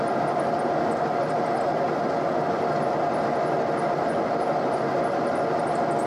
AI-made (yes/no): no